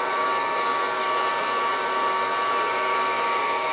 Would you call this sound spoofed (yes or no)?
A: no